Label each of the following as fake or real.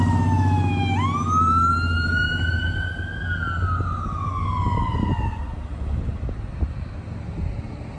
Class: real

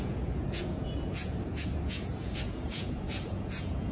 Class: fake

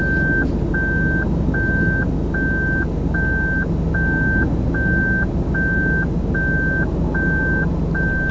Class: real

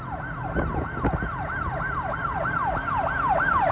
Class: real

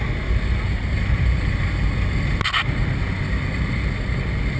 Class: real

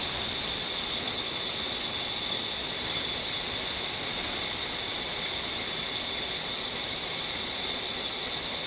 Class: real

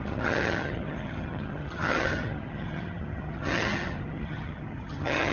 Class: fake